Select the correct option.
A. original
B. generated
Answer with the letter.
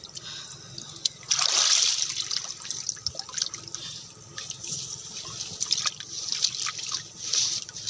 A